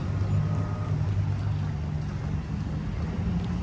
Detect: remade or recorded recorded